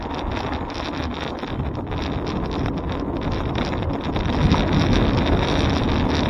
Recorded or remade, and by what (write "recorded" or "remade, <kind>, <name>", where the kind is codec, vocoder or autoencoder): recorded